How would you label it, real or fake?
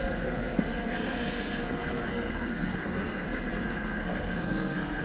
fake